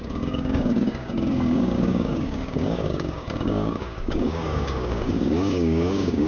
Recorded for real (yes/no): no